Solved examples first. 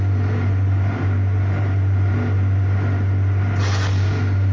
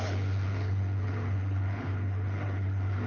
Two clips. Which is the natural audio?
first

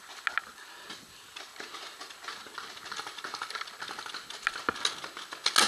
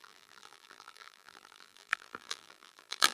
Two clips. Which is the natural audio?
first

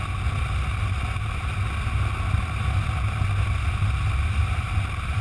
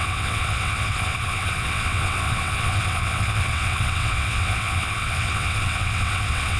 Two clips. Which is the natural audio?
first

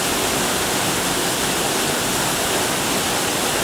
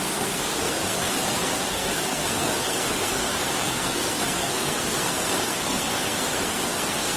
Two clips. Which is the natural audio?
first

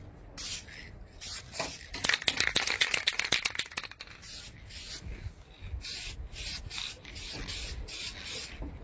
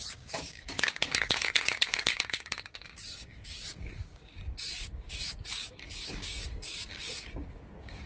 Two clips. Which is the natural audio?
first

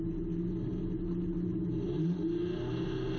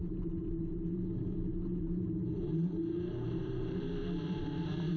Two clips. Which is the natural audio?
first